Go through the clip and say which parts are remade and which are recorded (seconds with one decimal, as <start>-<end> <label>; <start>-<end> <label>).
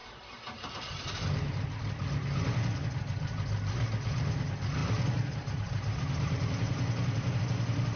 0.0-1.0 remade; 1.0-4.8 recorded; 4.8-7.4 remade; 7.4-8.0 recorded